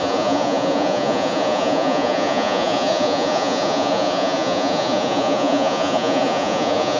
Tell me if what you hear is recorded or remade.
remade